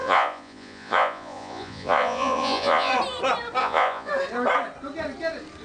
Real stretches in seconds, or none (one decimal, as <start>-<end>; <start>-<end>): 2.9-3.6; 4.1-5.6

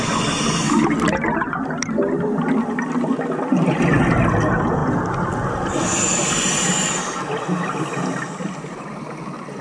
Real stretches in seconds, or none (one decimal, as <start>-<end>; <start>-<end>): 0.0-9.6

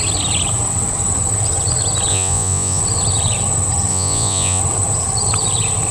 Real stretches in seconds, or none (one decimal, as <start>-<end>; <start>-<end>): 0.0-2.1; 2.8-3.9; 4.6-5.9

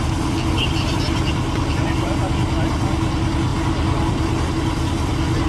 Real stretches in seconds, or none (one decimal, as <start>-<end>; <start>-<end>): 0.0-5.5